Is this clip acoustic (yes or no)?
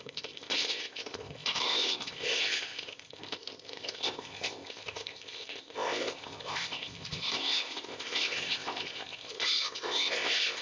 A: no